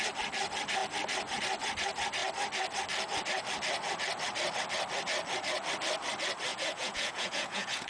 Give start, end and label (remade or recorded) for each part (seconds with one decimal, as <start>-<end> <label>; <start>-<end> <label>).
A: 0.0-6.5 recorded; 6.5-7.9 remade